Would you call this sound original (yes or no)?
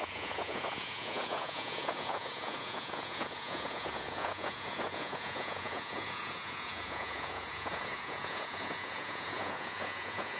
no